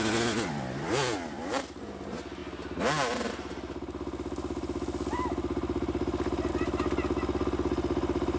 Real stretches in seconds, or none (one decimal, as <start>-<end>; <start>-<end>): 0.0-8.4